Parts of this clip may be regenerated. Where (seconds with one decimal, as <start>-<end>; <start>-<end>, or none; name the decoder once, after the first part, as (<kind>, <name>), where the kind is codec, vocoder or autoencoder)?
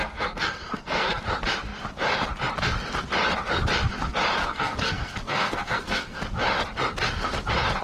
0.0-1.2 (codec, SNAC); 4.4-6.2